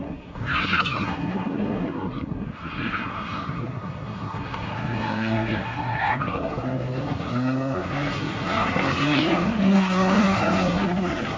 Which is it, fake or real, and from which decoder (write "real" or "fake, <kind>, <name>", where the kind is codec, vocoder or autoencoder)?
fake, codec, SNAC